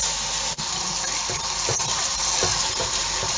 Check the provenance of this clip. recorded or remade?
recorded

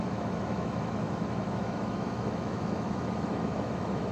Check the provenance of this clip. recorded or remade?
remade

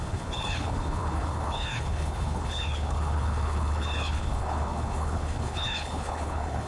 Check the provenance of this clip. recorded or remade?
remade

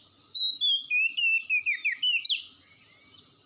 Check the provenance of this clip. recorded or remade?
recorded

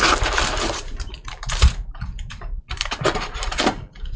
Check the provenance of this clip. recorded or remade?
remade